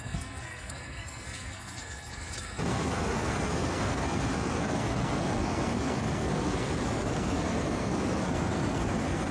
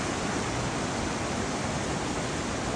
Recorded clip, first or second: second